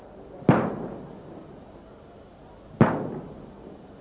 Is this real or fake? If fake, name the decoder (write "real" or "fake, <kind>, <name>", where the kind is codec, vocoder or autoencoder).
real